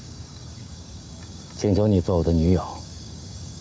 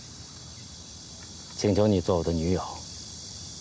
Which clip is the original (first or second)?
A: second